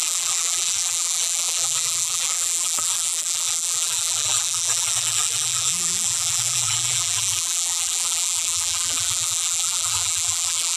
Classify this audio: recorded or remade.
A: remade